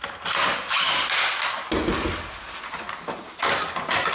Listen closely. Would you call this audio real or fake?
real